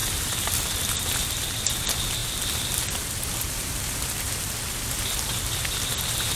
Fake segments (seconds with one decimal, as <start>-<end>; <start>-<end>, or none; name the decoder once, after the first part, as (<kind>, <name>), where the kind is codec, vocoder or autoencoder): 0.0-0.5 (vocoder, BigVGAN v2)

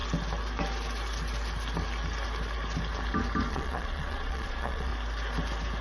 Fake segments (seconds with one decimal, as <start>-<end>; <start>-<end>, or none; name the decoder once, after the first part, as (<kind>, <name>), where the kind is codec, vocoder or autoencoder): 3.5-4.9 (vocoder, Vocos)

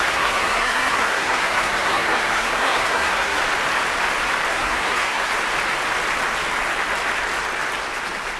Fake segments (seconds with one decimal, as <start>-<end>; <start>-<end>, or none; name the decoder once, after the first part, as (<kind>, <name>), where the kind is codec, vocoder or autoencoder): 0.0-3.4 (codec, SNAC); 4.5-5.3

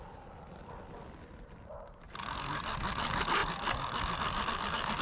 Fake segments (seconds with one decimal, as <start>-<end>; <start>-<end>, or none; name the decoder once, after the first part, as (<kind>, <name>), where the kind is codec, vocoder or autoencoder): none